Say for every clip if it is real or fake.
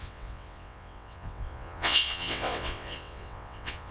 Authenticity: fake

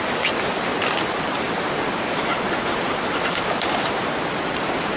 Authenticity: fake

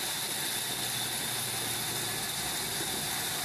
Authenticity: real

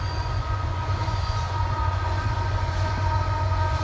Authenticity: fake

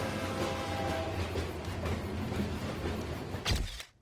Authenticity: real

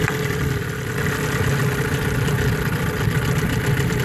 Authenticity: fake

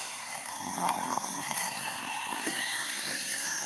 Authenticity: fake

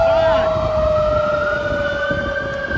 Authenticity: real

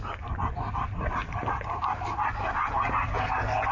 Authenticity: real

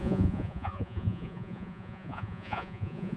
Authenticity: fake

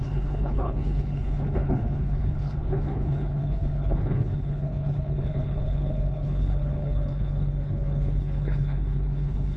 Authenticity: fake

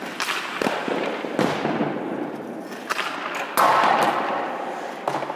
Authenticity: real